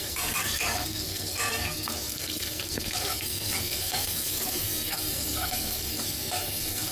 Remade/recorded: remade